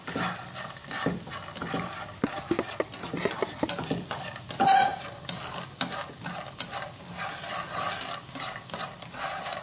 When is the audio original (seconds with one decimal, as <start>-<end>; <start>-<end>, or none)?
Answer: 0.0-9.6